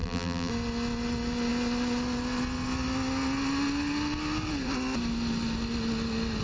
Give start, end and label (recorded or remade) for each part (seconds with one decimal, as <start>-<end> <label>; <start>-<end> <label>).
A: 0.0-0.5 remade; 0.5-6.4 recorded